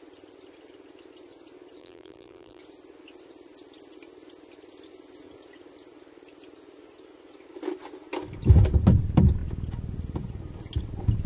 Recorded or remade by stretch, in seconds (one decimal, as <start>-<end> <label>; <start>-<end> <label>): 0.0-1.8 recorded; 1.8-2.6 remade; 2.6-11.3 recorded